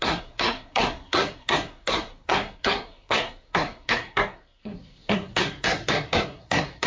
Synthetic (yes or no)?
yes